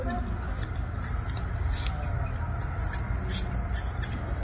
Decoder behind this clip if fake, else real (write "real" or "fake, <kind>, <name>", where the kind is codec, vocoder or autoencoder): real